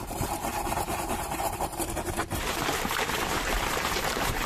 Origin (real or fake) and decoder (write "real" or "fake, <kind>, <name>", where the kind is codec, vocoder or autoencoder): fake, vocoder, BigVGAN v2